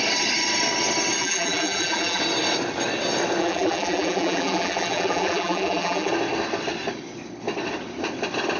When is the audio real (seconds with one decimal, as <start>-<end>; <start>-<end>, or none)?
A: 0.0-1.2; 2.2-3.4; 6.1-8.6